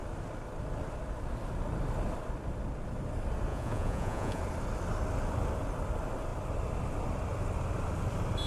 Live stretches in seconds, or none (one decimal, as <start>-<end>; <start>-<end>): 0.0-3.5; 4.4-8.5